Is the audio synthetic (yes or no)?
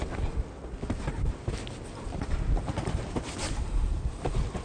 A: no